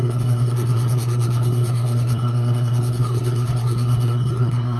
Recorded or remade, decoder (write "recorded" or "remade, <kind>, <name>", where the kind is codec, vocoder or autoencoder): remade, codec, SNAC